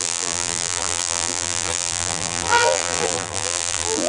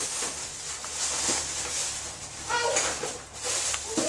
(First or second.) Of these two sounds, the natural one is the second